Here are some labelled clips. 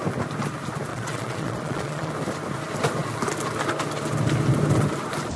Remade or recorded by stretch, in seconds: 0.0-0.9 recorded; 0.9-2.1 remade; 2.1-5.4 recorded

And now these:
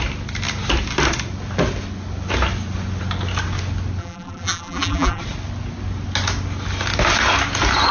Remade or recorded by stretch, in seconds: 0.0-4.0 recorded; 4.0-5.2 remade; 5.2-7.9 recorded

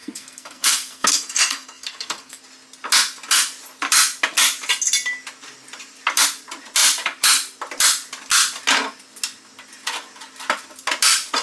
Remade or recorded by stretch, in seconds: 0.0-2.4 remade; 2.4-11.4 recorded